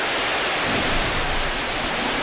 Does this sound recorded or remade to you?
recorded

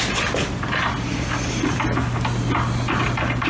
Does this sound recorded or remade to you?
recorded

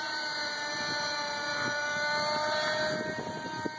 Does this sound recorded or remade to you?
recorded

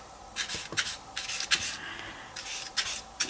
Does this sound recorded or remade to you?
recorded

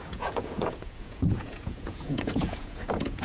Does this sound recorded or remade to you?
remade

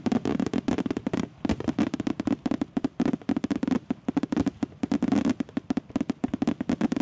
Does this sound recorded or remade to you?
recorded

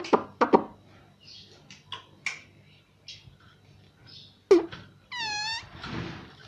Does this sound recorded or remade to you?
recorded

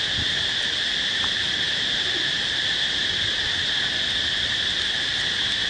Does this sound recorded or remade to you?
remade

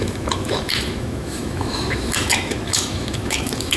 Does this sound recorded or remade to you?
remade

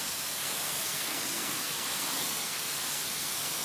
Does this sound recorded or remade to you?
remade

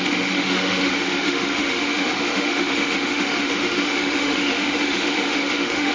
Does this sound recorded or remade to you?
remade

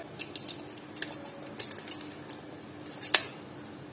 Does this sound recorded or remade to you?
recorded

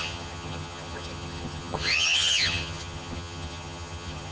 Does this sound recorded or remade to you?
remade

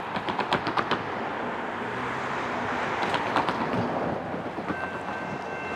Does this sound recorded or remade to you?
recorded